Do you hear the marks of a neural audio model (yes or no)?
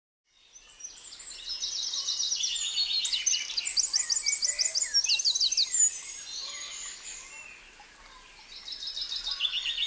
no